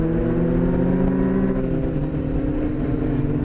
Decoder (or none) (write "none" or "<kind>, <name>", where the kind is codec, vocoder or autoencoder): none